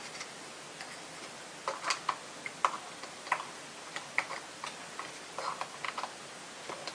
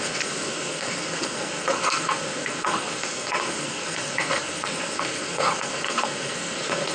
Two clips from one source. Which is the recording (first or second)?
first